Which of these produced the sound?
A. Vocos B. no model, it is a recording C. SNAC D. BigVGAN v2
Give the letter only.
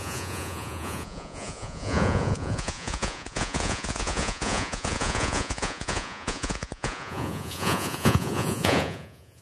A